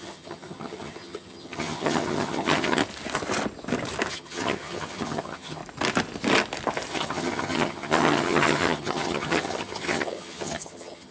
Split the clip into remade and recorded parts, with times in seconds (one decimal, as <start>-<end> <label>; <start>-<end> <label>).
0.0-2.8 remade; 2.8-4.1 recorded; 4.1-5.6 remade; 5.6-6.9 recorded; 6.9-11.1 remade